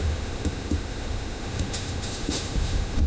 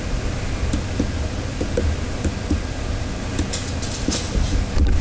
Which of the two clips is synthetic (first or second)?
first